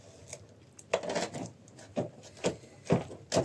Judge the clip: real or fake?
real